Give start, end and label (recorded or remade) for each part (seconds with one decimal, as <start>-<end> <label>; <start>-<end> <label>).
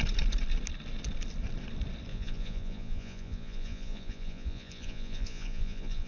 0.0-2.1 recorded; 2.1-6.1 remade